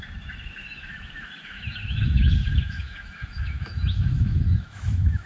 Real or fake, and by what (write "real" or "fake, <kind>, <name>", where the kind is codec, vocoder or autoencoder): fake, autoencoder, DAC-VAE